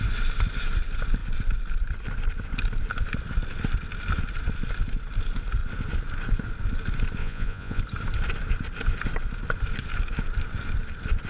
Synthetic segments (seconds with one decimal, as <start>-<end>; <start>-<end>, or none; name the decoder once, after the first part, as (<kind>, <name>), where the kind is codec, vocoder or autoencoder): 7.2-7.8 (vocoder, Vocos)